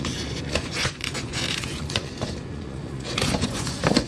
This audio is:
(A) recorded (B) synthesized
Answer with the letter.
B